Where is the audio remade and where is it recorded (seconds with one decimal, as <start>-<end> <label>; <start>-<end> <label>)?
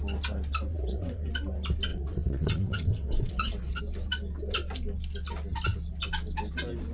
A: 0.0-0.7 recorded; 0.7-1.3 remade; 1.3-1.9 recorded; 1.9-3.8 remade; 3.8-6.9 recorded